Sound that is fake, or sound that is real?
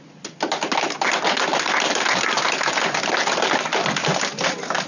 real